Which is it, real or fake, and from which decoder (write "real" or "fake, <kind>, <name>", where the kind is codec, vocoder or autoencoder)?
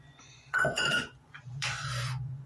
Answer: fake, vocoder, Vocos